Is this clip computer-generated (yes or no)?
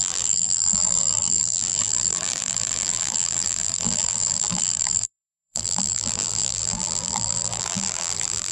yes